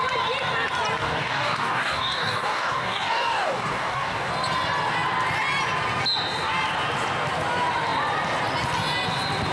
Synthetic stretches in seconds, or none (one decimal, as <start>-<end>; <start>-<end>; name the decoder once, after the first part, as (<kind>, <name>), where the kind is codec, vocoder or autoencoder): 1.0-4.3 (codec, DAC)